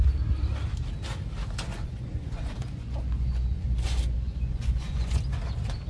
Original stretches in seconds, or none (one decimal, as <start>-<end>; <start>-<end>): 0.0-1.7; 5.2-5.9